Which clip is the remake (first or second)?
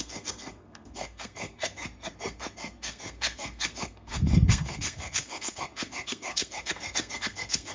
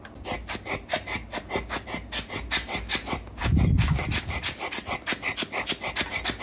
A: first